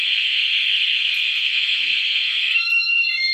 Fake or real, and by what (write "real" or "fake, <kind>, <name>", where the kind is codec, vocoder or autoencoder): fake, codec, SNAC